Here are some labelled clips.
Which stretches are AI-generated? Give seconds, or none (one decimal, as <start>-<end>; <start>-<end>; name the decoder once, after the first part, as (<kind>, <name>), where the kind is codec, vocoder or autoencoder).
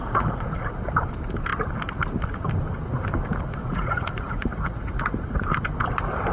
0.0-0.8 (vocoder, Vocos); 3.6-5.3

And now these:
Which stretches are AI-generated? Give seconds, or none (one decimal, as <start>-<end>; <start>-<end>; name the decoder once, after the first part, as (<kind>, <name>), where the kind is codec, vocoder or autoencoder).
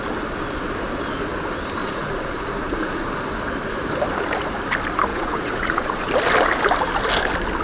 1.8-3.1 (vocoder, Vocos); 5.1-6.1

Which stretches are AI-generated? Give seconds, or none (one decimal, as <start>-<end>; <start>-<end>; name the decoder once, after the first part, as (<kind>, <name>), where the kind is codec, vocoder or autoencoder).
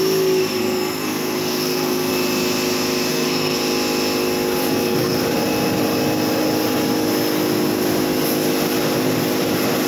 0.6-2.1 (codec, SNAC); 3.1-3.6; 4.6-5.2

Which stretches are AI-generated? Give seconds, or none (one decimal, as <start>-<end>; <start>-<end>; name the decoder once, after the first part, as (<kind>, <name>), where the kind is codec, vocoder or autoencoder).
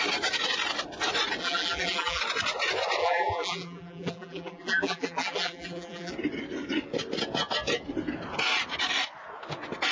1.4-2.2 (vocoder, BigVGAN v2); 3.0-6.1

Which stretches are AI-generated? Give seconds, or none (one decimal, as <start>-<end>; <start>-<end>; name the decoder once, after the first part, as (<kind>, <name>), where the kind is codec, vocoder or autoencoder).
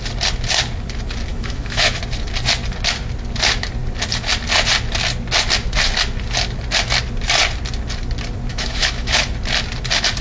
1.3-2.0 (autoencoder, DAC-VAE); 8.5-9.2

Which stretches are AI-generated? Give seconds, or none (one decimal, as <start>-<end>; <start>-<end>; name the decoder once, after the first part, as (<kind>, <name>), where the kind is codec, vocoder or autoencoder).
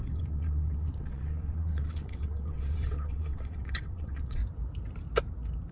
0.0-4.4 (vocoder, WaveNeXt)